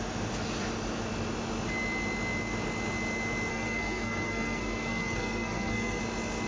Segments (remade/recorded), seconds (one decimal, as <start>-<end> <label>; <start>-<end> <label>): 0.0-3.5 recorded; 3.5-6.0 remade; 6.0-6.5 recorded